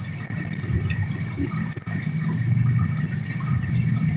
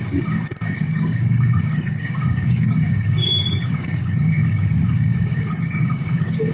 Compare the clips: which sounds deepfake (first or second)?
second